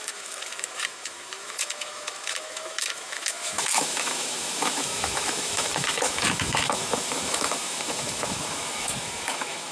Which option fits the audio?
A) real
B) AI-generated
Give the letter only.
B